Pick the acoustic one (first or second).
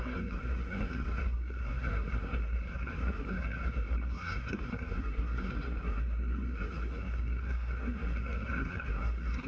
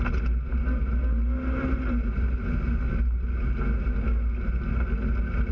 second